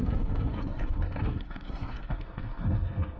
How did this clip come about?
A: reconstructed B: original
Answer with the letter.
A